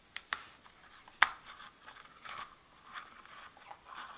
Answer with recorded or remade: recorded